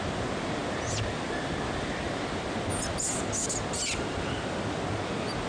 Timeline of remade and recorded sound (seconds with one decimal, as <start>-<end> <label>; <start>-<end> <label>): 0.0-5.5 recorded